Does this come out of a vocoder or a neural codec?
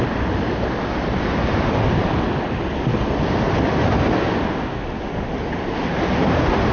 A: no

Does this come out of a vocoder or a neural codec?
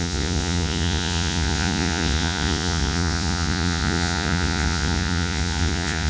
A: yes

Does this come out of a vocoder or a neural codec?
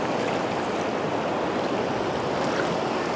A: no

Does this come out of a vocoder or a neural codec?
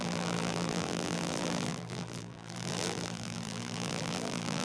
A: yes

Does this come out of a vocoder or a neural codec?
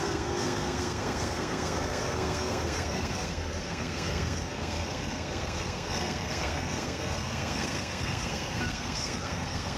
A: yes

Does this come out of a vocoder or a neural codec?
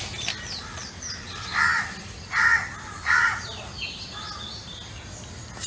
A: no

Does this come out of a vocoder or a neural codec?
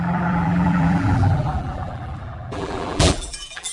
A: yes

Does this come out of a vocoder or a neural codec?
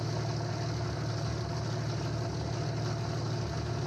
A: no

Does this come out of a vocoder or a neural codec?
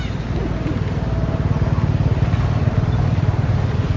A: no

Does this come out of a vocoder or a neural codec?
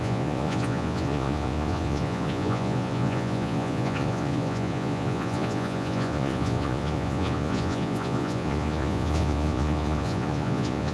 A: yes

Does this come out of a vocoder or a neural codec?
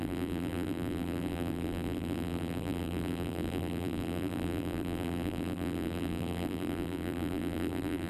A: yes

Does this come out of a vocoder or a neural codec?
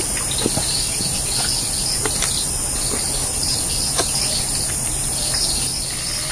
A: no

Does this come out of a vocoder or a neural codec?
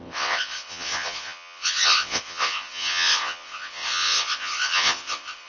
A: yes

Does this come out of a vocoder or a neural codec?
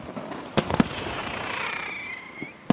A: no